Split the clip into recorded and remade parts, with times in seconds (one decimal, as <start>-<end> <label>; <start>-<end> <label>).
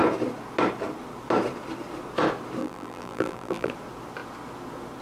0.0-2.6 recorded; 2.6-3.7 remade; 3.7-5.0 recorded